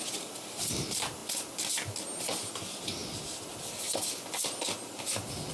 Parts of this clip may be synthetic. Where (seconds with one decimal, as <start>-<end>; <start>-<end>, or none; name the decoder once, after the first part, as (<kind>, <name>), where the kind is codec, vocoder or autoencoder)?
none